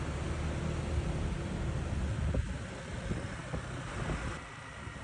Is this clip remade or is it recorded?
recorded